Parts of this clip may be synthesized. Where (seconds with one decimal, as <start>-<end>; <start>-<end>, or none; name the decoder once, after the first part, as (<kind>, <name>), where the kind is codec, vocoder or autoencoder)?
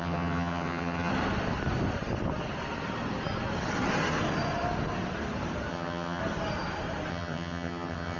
0.0-1.1 (vocoder, HiFi-GAN); 5.7-6.2; 7.1-8.2